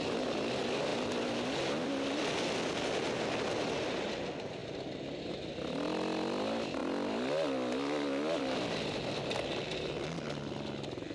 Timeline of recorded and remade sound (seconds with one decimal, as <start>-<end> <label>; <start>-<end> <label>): 0.0-11.1 recorded